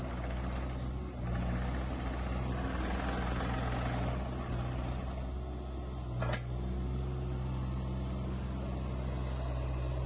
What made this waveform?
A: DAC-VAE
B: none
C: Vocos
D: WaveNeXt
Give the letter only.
B